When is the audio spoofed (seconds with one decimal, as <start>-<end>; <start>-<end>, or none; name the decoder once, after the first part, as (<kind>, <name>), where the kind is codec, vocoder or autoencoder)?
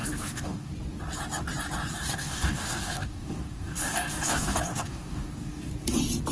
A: 0.0-0.7 (codec, DAC); 1.9-5.7